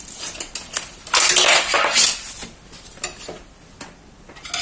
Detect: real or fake real